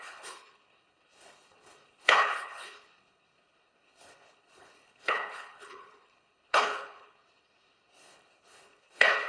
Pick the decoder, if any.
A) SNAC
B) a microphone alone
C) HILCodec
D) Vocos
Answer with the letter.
C